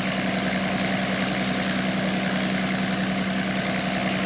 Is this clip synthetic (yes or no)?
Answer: no